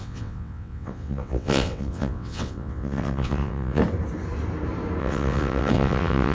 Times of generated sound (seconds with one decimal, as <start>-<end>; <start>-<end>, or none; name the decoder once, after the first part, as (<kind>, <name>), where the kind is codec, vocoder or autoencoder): 0.0-3.8 (vocoder, WaveNeXt); 5.0-6.3